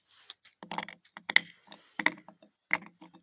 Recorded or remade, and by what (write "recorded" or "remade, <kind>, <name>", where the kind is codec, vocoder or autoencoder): recorded